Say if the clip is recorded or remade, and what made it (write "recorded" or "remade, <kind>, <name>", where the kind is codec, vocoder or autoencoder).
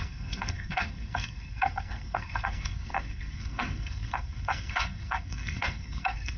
remade, codec, SNAC